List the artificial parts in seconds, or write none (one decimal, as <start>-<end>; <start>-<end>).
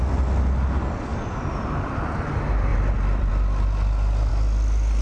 1.1-2.0; 2.7-3.3